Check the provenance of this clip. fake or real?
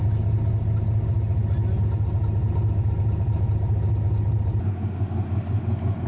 real